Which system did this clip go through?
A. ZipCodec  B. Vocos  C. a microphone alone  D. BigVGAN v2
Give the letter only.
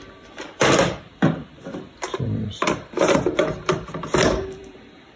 D